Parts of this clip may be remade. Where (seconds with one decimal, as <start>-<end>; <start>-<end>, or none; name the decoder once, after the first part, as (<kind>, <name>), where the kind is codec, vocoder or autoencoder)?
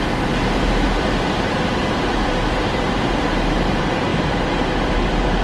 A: 0.0-5.4 (vocoder, BigVGAN v2)